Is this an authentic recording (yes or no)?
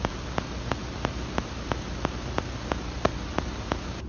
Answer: yes